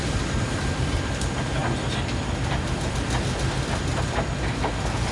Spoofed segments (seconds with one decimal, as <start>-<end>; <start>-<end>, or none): 0.0-1.6; 2.7-5.1